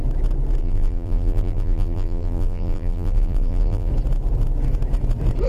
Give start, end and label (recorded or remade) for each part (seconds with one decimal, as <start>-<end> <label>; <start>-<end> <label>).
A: 0.0-0.6 recorded; 0.6-3.9 remade; 3.9-5.5 recorded